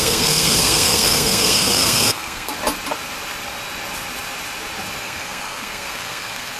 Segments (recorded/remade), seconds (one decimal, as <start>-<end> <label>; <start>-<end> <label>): 0.0-2.6 remade; 2.6-5.0 recorded; 5.0-6.6 remade